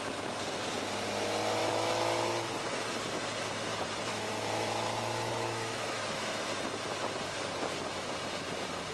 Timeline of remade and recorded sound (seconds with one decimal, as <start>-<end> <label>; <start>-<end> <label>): 0.0-1.6 recorded; 1.6-2.3 remade; 2.3-3.7 recorded; 3.7-6.4 remade; 6.4-8.9 recorded